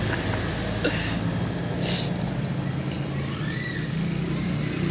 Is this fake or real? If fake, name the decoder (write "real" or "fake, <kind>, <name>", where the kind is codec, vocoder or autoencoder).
real